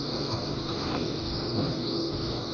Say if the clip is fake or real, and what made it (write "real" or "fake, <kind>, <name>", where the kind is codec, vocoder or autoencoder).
fake, codec, DAC